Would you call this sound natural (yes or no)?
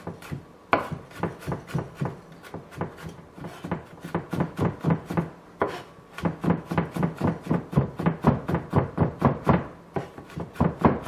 yes